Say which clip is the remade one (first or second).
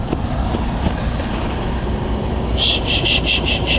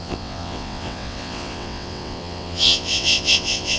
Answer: second